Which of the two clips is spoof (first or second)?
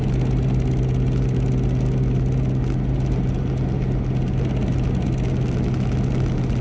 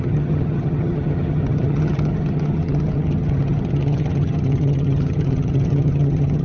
second